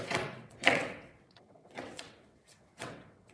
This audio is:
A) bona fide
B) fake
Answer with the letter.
B